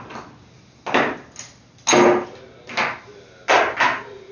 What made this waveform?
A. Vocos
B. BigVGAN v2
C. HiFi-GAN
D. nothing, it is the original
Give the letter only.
D